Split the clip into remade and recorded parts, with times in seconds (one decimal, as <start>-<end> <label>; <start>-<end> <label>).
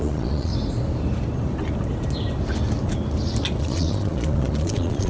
0.0-0.5 remade; 0.5-3.6 recorded; 3.6-5.1 remade